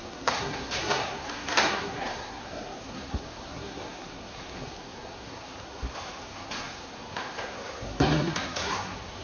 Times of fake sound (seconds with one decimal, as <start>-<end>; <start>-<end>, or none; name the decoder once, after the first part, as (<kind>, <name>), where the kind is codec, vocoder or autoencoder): 0.0-9.2 (codec, SNAC)